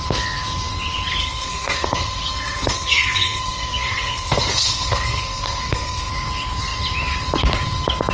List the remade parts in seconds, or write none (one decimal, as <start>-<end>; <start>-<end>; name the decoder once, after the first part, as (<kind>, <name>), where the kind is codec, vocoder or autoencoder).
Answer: 1.2-6.1 (codec, SNAC)